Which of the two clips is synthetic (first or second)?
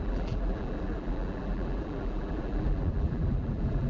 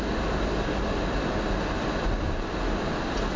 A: first